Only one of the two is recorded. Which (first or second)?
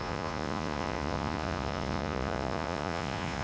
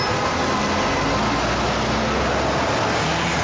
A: second